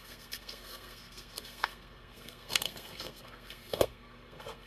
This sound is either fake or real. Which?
fake